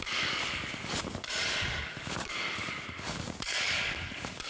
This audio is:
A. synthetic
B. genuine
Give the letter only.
A